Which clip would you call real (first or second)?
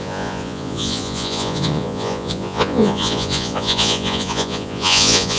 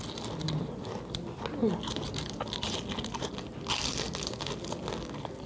second